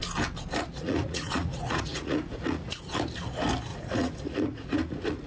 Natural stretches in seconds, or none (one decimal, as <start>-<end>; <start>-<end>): 0.0-0.7; 2.8-3.7